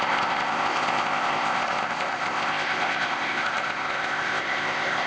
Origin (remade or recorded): remade